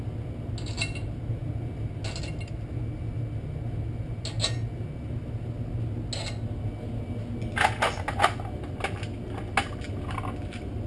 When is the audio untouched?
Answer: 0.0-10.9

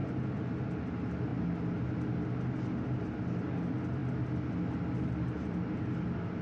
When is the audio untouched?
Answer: 0.0-6.4